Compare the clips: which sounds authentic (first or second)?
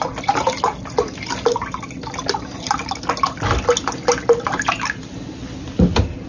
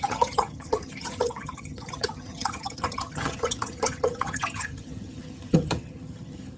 first